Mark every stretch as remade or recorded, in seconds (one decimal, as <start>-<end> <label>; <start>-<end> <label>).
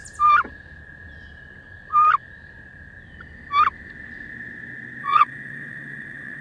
0.0-5.0 recorded; 5.0-6.4 remade